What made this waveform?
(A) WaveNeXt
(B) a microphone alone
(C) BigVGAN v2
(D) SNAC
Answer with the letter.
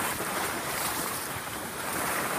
C